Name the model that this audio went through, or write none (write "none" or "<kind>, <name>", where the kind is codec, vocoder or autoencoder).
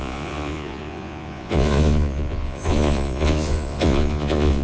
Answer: vocoder, Vocos